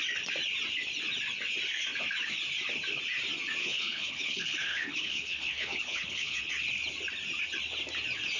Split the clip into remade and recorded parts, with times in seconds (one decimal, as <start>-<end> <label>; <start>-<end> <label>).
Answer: 0.0-3.6 recorded; 3.6-6.5 remade; 6.5-8.4 recorded